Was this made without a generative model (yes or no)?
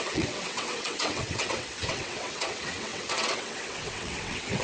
no